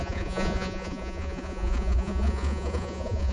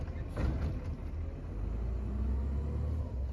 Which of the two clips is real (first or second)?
second